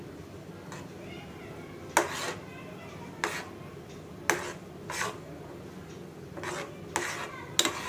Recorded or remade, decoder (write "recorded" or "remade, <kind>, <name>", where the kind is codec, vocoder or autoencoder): recorded